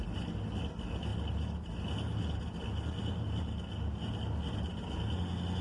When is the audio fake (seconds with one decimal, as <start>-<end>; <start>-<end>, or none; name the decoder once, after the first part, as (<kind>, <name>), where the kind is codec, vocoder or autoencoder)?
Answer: none